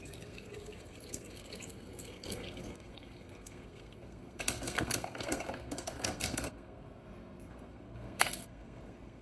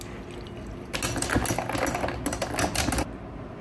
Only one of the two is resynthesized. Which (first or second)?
first